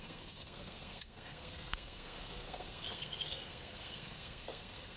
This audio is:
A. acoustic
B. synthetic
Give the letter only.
B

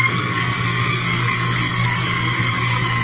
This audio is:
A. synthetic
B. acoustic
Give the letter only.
A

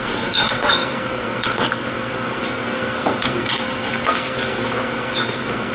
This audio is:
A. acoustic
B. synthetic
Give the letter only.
B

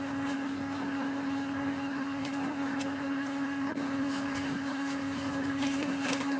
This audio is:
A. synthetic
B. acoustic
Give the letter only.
A